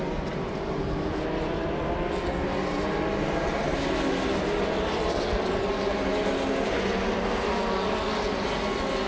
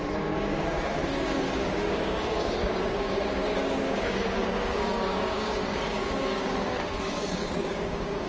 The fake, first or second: second